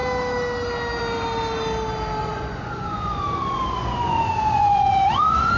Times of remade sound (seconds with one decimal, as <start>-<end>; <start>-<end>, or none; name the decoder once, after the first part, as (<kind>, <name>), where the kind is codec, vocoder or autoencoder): 2.2-5.6 (vocoder, Vocos)